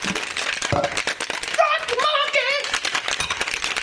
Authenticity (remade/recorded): recorded